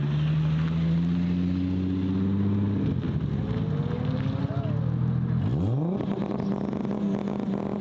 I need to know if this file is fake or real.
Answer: real